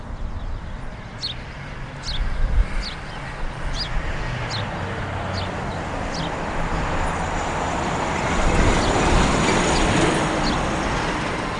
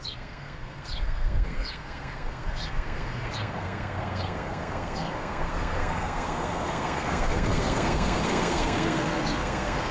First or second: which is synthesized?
second